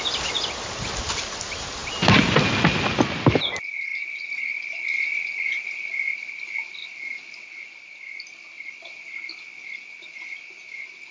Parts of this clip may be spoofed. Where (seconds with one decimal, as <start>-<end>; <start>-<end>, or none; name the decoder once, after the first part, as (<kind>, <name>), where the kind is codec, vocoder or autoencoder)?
none